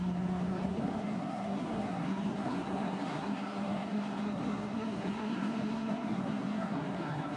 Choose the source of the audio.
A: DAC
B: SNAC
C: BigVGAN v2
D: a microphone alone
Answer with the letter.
B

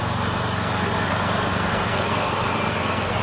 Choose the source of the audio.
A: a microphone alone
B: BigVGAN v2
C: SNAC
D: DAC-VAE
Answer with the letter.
C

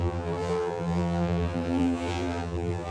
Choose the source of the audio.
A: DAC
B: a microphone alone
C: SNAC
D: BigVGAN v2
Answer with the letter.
D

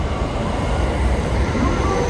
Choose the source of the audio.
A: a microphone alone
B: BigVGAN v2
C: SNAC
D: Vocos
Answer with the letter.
A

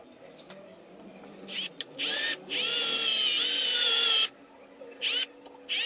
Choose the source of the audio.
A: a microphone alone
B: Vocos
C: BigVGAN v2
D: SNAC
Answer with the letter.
A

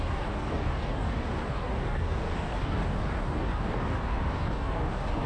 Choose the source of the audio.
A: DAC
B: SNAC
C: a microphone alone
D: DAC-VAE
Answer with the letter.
A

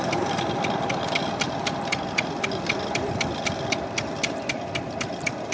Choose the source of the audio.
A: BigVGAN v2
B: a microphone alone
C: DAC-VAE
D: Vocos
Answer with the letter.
B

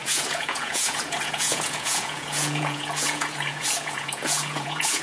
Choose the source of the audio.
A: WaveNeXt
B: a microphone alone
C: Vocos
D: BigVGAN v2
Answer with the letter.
C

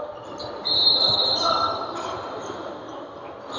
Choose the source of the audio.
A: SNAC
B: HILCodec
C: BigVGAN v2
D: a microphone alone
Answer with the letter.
D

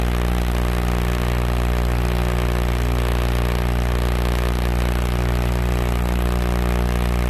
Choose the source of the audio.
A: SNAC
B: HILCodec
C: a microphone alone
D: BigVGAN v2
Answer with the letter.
C